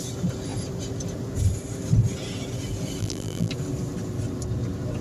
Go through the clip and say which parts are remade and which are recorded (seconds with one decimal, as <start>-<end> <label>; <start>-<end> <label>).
0.0-3.0 recorded; 3.0-3.5 remade; 3.5-5.0 recorded